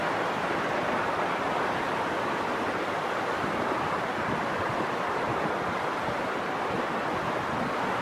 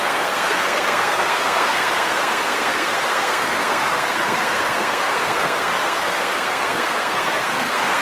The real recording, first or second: first